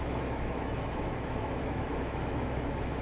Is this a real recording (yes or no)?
no